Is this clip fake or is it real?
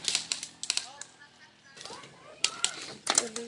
real